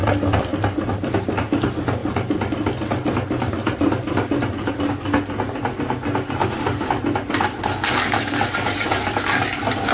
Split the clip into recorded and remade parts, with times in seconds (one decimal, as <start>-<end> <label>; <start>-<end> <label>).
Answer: 0.0-6.4 recorded; 6.4-6.9 remade; 6.9-9.9 recorded